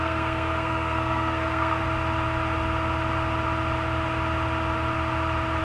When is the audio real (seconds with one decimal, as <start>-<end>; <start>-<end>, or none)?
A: 1.8-5.6